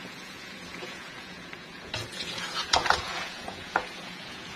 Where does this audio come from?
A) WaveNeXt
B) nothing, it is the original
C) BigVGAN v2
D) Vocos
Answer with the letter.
D